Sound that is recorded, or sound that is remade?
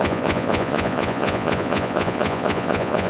remade